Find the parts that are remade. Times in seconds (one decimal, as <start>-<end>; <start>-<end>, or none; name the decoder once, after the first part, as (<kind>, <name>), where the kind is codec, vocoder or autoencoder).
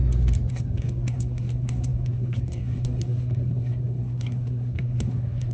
0.5-5.5 (codec, SNAC)